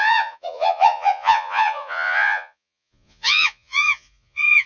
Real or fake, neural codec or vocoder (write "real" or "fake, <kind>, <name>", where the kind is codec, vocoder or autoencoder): fake, vocoder, Vocos